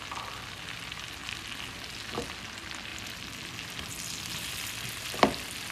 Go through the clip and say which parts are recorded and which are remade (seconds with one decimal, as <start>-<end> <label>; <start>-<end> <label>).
0.0-5.7 recorded